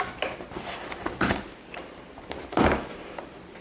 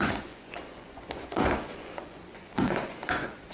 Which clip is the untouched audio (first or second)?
first